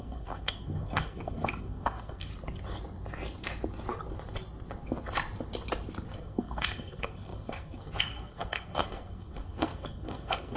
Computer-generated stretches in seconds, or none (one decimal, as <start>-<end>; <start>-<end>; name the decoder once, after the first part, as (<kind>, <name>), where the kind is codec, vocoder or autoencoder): 0.0-2.3 (codec, SNAC); 6.2-10.6